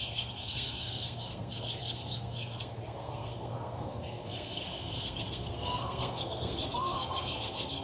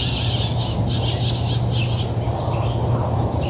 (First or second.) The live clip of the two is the second